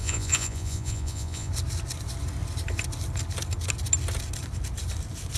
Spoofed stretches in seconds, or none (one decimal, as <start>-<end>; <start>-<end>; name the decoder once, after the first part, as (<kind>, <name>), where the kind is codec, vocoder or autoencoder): 0.0-1.5 (vocoder, Vocos)